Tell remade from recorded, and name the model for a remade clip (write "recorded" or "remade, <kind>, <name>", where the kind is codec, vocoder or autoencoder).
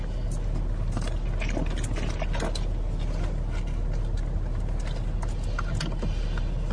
recorded